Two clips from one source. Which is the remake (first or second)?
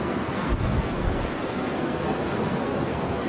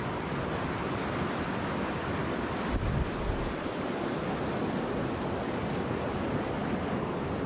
first